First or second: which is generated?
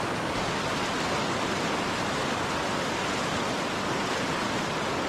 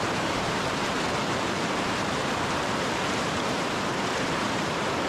second